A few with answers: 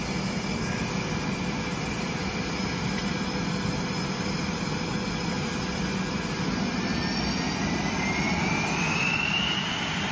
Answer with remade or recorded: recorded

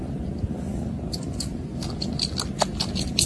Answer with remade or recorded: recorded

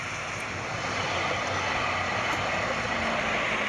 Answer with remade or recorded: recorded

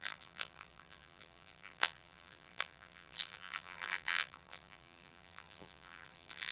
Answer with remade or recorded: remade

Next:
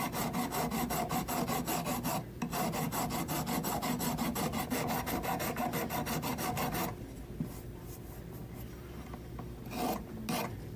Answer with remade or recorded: recorded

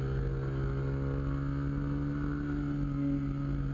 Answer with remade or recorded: recorded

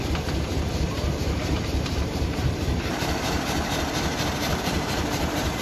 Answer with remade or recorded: remade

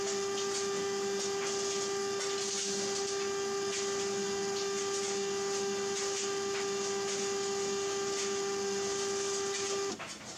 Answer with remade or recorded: recorded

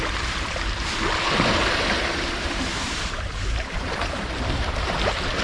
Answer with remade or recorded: remade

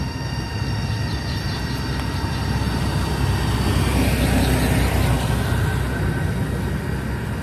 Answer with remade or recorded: recorded